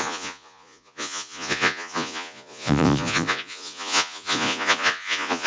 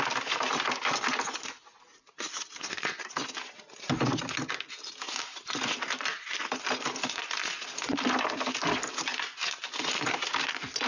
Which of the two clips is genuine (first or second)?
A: second